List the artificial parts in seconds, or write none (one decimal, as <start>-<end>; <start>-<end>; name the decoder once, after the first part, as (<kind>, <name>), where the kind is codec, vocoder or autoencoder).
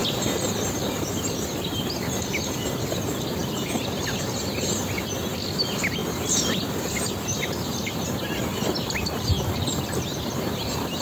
0.0-0.7 (vocoder, BigVGAN v2); 3.4-4.5